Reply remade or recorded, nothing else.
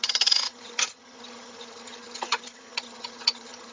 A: remade